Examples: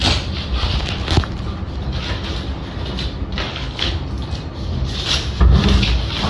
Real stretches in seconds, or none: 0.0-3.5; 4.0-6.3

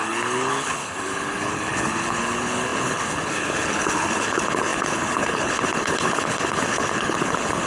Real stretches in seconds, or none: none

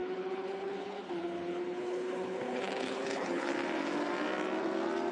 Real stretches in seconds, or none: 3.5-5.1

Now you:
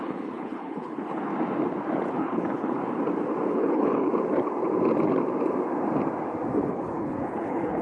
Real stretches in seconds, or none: 1.3-2.1; 2.8-3.5; 4.1-6.7

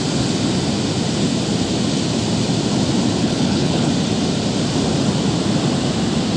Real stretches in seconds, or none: 0.0-3.2; 3.9-6.4

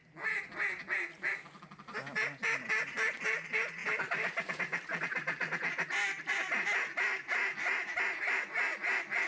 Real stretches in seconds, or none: 0.0-9.3